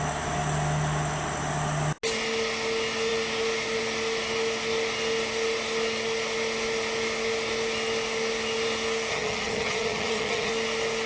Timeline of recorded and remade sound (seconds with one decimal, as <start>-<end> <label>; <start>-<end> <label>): 0.0-9.1 recorded; 9.1-10.5 remade; 10.5-11.1 recorded

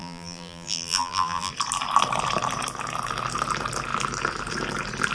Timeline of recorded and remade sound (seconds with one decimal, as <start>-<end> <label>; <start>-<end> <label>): 0.0-1.5 remade; 1.5-5.1 recorded